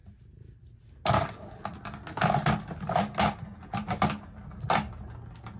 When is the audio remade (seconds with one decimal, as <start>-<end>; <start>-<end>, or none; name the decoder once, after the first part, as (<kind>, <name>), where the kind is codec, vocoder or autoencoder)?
none